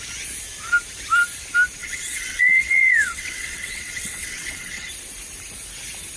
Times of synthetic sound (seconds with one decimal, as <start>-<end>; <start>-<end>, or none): 1.8-4.9